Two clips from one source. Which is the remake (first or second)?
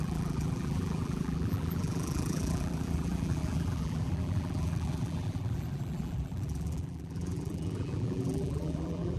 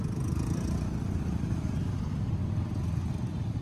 first